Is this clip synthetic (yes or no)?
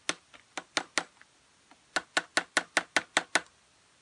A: no